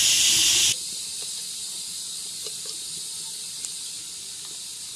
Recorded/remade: recorded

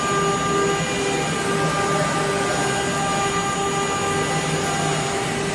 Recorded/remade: recorded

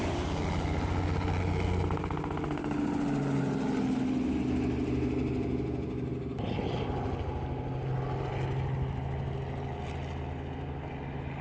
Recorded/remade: recorded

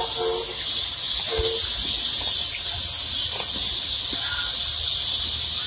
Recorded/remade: recorded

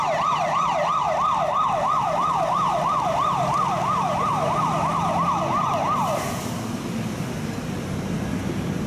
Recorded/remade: recorded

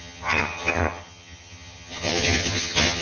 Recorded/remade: remade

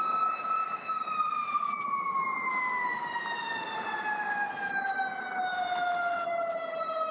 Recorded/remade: recorded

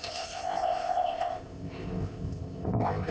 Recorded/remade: remade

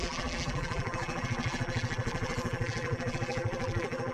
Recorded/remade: remade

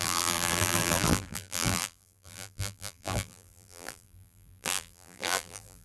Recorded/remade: remade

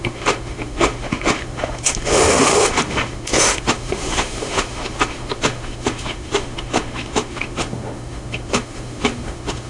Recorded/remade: remade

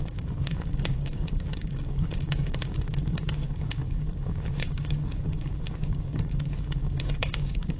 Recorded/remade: remade